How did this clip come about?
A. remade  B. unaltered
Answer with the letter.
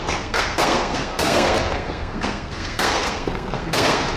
A